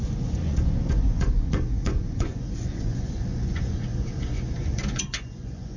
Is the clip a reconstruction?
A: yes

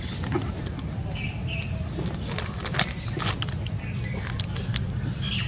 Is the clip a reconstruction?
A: no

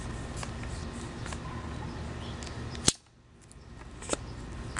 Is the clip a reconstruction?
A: no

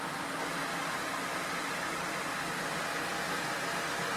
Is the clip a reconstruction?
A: no